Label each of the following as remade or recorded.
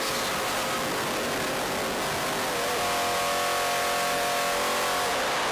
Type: recorded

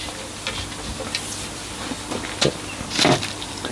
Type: recorded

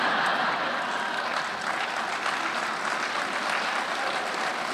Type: recorded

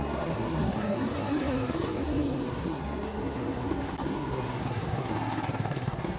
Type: remade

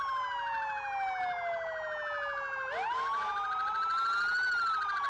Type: recorded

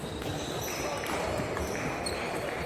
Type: recorded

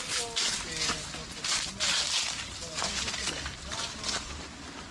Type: recorded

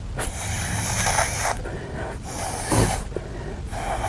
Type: recorded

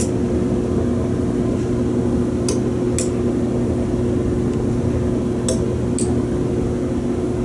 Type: recorded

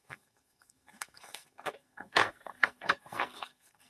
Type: remade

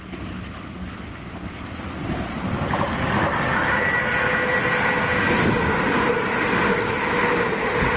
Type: recorded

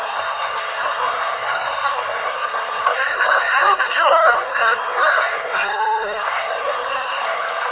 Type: remade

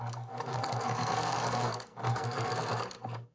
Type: remade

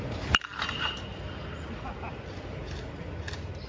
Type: recorded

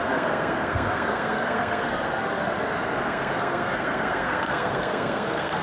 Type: remade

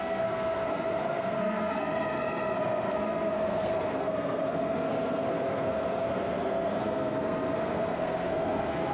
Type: remade